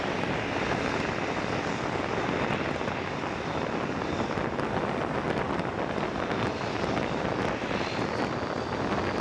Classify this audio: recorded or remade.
recorded